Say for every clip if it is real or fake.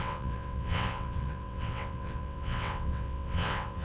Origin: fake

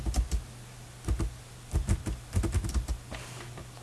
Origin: real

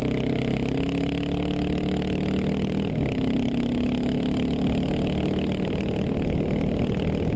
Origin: real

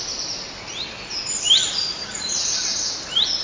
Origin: real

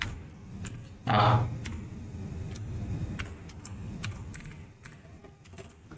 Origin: real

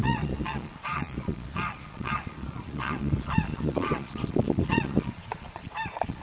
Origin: fake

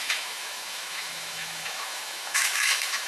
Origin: fake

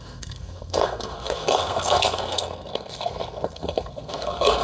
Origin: fake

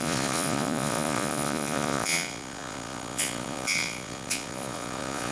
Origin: fake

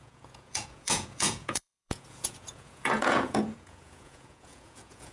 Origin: fake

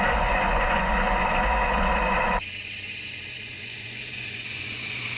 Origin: fake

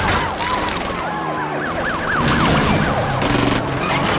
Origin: real